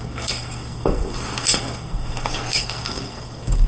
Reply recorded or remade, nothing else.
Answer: remade